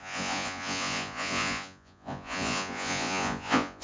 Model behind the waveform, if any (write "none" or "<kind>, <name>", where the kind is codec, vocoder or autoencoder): vocoder, Vocos